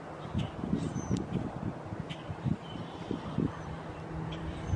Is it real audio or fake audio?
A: fake